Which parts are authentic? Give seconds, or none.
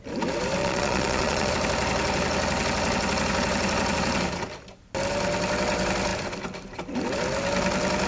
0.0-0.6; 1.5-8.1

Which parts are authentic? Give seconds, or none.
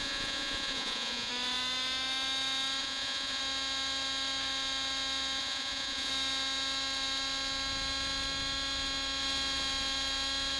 1.3-2.8; 3.4-5.4; 6.1-10.6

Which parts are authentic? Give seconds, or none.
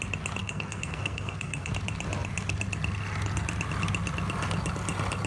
0.0-0.4; 1.7-5.3